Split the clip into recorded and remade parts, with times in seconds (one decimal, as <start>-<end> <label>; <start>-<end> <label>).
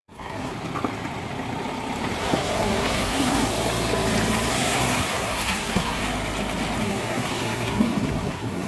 0.0-0.5 remade; 0.5-2.2 recorded; 2.2-3.5 remade; 3.5-4.5 recorded; 4.5-6.0 remade; 6.0-6.8 recorded; 6.8-8.7 remade